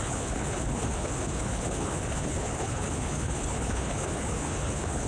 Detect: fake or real fake